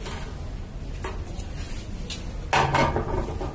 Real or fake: real